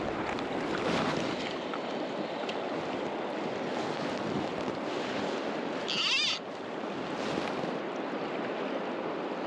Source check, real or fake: real